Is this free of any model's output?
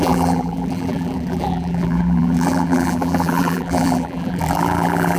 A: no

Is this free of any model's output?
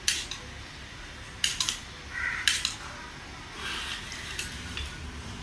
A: yes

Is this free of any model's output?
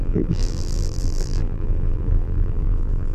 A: no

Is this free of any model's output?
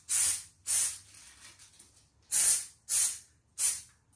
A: yes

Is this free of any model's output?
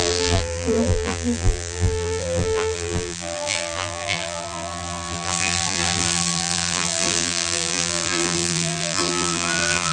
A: no